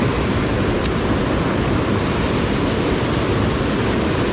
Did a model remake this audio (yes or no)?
no